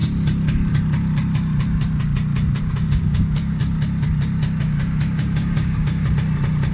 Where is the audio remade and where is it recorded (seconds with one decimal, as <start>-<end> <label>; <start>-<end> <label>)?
0.0-2.6 recorded; 2.6-3.6 remade; 3.6-4.6 recorded; 4.6-6.0 remade; 6.0-6.7 recorded